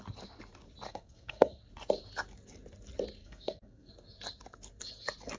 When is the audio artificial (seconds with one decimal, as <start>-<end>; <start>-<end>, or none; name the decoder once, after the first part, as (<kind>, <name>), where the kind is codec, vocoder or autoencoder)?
0.9-1.6 (codec, SNAC); 3.2-3.9